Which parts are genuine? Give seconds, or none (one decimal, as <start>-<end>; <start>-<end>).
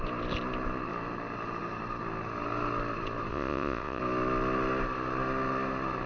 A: 0.0-3.3; 4.0-6.1